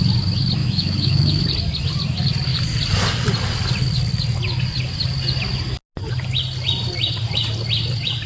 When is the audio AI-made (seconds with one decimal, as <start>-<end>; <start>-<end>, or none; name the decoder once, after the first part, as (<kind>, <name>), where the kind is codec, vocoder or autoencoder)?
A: 0.6-1.4 (autoencoder, DAC-VAE)